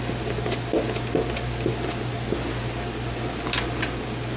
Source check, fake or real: real